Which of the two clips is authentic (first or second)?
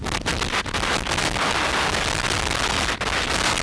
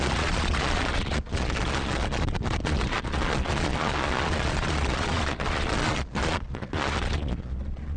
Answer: first